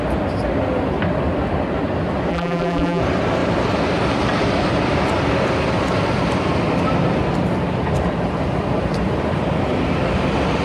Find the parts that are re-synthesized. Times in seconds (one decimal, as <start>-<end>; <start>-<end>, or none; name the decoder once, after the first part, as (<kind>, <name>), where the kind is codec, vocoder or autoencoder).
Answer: 2.3-3.0 (vocoder, BigVGAN v2)